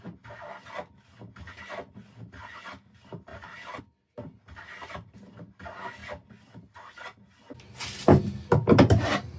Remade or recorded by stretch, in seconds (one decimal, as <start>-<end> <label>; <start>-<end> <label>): 0.0-3.3 recorded; 3.3-3.8 remade; 3.8-9.4 recorded